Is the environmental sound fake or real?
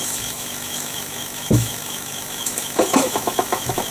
fake